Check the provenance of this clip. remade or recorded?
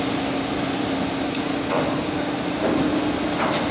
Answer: recorded